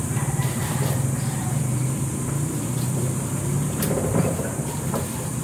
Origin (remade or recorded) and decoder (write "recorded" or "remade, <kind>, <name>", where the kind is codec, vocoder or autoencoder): remade, vocoder, BigVGAN v2